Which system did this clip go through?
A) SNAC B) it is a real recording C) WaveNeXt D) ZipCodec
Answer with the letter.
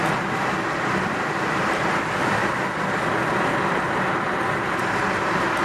B